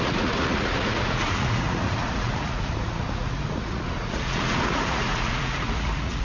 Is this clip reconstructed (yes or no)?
yes